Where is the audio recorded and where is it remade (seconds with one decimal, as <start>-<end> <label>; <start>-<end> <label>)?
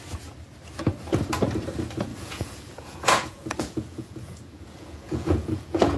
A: 0.0-2.1 recorded; 2.1-6.0 remade